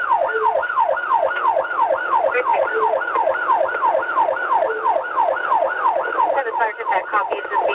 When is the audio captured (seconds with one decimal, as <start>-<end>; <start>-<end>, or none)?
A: 0.0-7.7